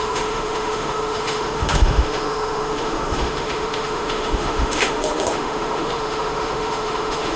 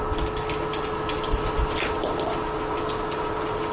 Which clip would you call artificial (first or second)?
first